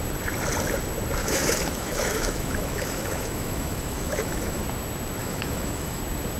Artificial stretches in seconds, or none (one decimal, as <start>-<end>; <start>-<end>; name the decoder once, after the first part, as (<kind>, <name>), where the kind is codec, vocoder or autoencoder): 1.2-4.6 (autoencoder, DAC-VAE); 5.2-6.0